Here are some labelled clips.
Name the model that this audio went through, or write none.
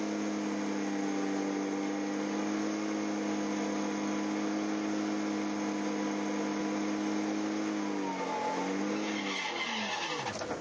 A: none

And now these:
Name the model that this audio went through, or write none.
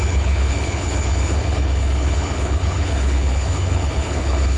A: codec, HILCodec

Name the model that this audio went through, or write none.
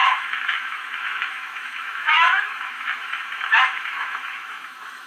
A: autoencoder, DAC-VAE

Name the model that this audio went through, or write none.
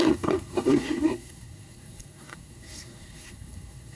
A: codec, SNAC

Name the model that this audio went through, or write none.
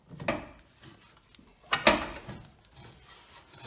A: none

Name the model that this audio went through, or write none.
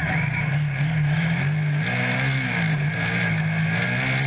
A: none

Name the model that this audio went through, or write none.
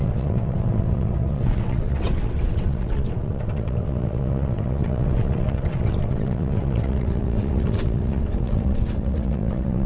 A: vocoder, WaveNeXt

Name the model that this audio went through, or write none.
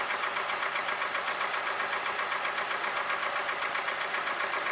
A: none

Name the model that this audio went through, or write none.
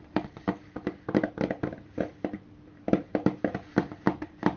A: vocoder, BigVGAN v2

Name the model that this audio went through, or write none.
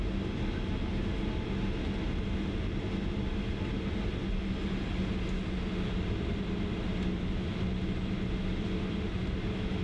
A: none